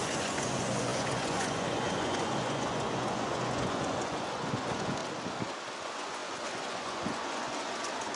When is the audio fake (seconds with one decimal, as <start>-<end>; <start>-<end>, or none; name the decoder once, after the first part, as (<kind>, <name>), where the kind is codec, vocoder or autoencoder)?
0.0-5.0 (vocoder, Vocos); 5.8-8.2

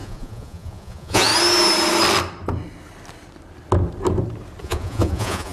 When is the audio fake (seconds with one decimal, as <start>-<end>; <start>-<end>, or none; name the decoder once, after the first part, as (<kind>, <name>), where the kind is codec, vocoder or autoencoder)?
0.0-1.3 (vocoder, Vocos); 4.6-5.5

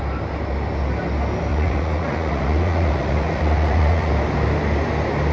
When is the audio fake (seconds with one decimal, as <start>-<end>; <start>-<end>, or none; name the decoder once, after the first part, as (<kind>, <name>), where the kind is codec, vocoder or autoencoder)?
1.5-4.1 (vocoder, Vocos)

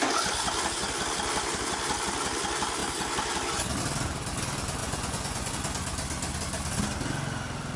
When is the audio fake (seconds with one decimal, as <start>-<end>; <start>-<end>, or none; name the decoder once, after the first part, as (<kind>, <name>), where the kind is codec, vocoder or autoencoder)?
4.8-5.5 (vocoder, Vocos)

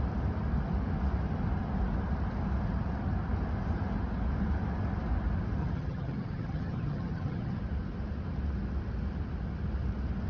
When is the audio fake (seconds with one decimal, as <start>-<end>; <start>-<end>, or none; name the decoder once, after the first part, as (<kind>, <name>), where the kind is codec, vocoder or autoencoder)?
5.6-7.6 (vocoder, HiFi-GAN)

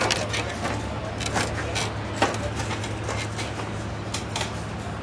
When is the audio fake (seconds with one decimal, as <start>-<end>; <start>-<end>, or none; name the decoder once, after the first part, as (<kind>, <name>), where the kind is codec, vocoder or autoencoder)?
none

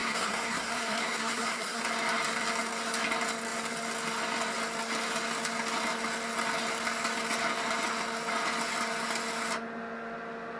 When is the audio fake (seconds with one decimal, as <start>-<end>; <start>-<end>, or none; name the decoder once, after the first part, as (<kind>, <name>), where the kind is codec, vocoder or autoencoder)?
0.0-1.8 (codec, SNAC)